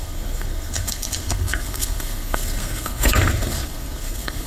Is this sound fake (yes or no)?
yes